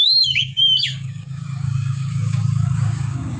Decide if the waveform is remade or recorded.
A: remade